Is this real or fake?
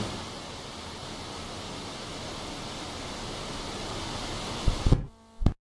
real